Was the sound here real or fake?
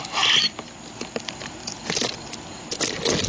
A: real